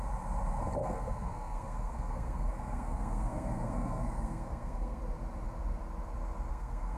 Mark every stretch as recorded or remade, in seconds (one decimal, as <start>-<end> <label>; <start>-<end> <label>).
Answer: 0.0-0.8 recorded; 0.8-5.0 remade; 5.0-6.5 recorded; 6.5-7.0 remade